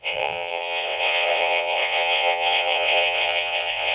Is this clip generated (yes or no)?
yes